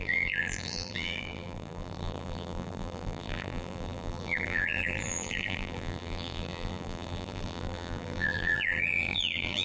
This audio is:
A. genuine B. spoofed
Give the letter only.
B